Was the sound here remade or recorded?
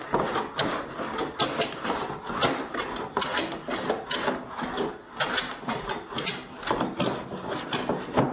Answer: recorded